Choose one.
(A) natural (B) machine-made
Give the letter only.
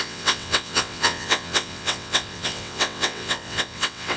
B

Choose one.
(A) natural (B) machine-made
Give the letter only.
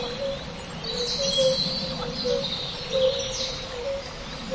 A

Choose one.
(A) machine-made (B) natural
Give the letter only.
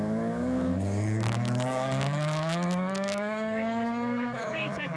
A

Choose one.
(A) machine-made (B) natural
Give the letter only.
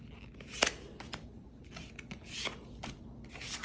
B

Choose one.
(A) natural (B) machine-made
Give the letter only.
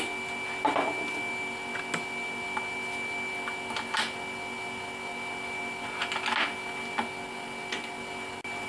A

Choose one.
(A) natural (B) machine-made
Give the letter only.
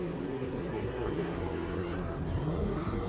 B